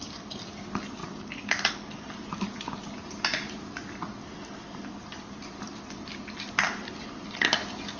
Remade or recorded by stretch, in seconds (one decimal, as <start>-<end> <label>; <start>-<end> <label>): 0.0-3.3 recorded; 3.3-5.8 remade; 5.8-8.0 recorded